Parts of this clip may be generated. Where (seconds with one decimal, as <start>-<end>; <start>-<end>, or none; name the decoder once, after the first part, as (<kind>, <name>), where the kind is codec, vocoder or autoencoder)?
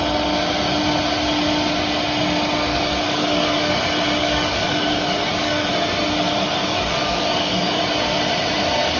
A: 2.7-3.7 (codec, DAC); 4.2-5.7; 6.6-7.8